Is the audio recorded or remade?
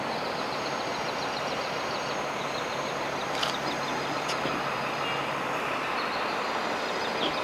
recorded